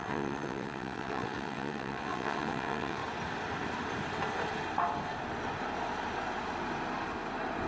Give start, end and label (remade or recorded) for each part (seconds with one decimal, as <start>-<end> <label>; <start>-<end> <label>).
0.0-3.0 remade; 3.0-7.7 recorded

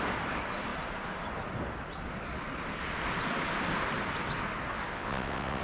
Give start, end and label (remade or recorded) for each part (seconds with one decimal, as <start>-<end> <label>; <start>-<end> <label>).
0.0-4.9 recorded; 4.9-5.6 remade

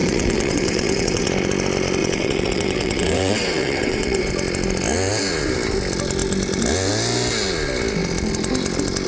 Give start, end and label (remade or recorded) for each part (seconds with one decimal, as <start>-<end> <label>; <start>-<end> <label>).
0.0-1.3 remade; 1.3-2.0 recorded; 2.0-4.3 remade; 4.3-9.1 recorded

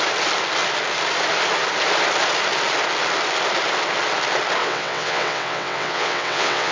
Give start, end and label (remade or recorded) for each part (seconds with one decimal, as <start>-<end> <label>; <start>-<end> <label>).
0.0-4.6 recorded; 4.6-6.7 remade

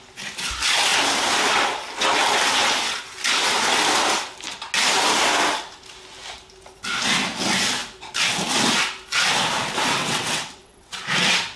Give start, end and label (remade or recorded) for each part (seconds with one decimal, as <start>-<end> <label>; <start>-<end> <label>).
0.0-10.0 recorded; 10.0-11.0 remade; 11.0-11.6 recorded

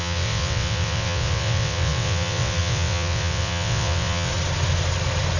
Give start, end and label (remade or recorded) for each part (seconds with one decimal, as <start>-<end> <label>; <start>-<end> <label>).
0.0-4.3 remade; 4.3-5.4 recorded